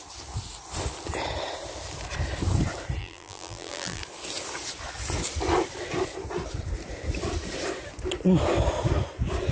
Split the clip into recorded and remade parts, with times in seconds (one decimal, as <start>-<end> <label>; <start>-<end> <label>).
0.0-3.0 recorded; 3.0-4.0 remade; 4.0-9.5 recorded